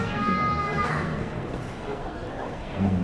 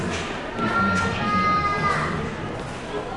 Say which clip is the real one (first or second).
second